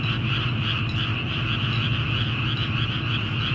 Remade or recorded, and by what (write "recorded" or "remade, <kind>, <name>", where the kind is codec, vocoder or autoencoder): remade, vocoder, BigVGAN v2